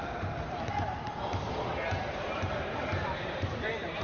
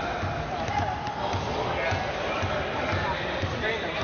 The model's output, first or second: first